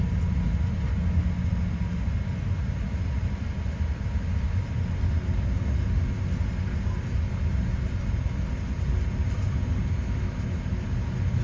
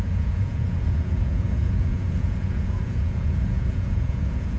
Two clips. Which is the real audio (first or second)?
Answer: first